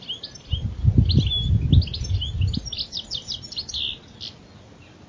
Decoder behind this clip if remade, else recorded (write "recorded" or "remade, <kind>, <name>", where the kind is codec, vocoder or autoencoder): recorded